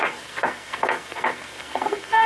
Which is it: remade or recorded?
remade